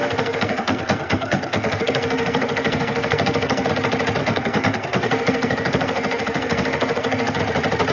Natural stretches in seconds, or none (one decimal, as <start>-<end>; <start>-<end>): 3.7-4.2; 7.4-7.9